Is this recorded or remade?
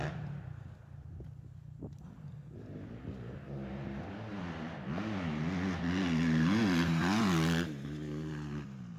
recorded